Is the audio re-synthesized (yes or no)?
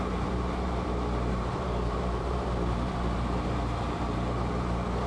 yes